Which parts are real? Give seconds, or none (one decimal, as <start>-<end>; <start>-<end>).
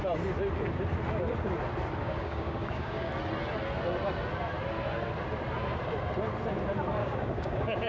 0.0-2.0; 3.1-7.0